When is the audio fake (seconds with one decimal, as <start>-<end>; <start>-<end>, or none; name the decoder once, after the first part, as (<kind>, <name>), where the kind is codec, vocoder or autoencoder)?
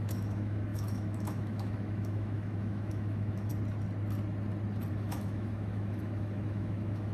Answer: 0.0-3.5 (autoencoder, DAC-VAE); 4.9-7.1